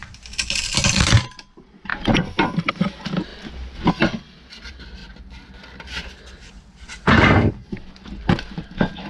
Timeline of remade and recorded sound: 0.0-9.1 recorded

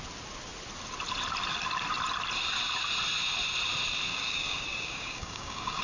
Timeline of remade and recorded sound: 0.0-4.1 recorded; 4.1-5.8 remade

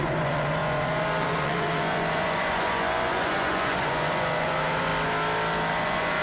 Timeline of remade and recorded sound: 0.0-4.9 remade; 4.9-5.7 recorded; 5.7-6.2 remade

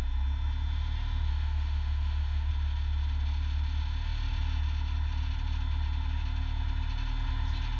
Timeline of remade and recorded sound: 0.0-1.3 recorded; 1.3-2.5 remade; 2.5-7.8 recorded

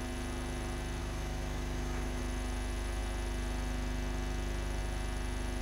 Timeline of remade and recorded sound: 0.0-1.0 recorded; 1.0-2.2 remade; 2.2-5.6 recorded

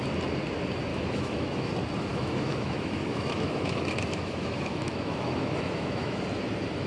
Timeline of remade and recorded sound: 0.0-0.9 recorded; 0.9-1.7 remade; 1.7-2.1 recorded; 2.1-6.2 remade; 6.2-6.9 recorded